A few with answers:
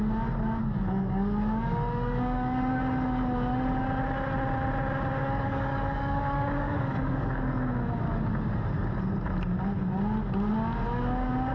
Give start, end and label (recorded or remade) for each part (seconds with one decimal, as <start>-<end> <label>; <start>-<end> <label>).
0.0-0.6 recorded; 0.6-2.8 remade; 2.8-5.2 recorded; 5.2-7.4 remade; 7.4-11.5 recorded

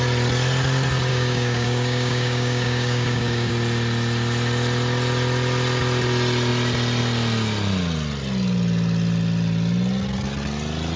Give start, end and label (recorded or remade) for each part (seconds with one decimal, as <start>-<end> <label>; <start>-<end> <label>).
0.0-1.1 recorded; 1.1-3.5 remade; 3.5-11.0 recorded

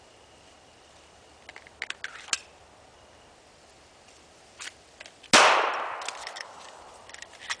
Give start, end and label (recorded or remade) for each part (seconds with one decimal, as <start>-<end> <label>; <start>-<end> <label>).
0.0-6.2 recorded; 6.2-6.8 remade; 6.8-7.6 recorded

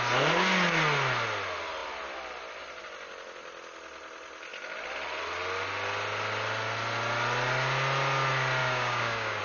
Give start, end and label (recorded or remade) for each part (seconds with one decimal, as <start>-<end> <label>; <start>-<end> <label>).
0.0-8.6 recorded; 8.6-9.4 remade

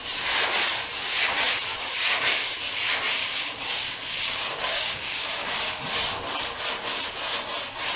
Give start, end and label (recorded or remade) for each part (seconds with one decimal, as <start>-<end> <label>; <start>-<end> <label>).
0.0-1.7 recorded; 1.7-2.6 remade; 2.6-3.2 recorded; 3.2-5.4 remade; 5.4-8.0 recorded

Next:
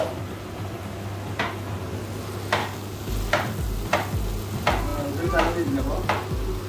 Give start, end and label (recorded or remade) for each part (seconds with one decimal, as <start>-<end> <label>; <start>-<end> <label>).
0.0-2.6 recorded; 2.6-3.1 remade; 3.1-6.7 recorded

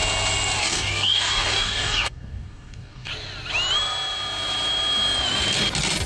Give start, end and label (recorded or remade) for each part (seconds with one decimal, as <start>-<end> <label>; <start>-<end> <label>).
0.0-0.6 recorded; 0.6-3.1 remade; 3.1-6.1 recorded

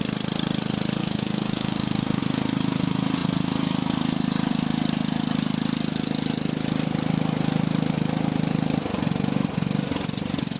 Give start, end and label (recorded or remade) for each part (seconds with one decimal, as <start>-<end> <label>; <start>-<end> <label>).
0.0-1.0 recorded; 1.0-2.2 remade; 2.2-10.6 recorded